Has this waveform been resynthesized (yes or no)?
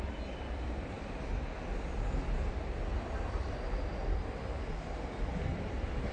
no